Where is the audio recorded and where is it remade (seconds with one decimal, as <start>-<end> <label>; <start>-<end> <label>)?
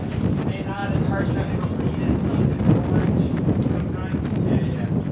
0.0-5.1 recorded